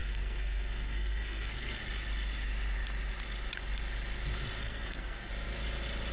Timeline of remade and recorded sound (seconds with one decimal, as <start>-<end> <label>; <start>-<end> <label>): 0.0-1.8 remade; 1.8-4.6 recorded; 4.6-5.3 remade; 5.3-6.1 recorded